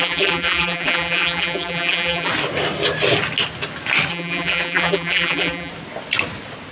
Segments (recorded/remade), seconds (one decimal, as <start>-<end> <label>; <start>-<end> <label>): 0.0-2.3 remade; 2.3-4.1 recorded; 4.1-5.7 remade; 5.7-6.7 recorded